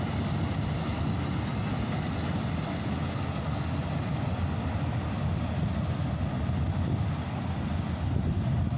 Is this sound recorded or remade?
recorded